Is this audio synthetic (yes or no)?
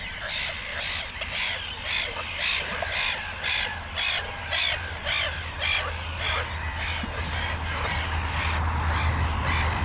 no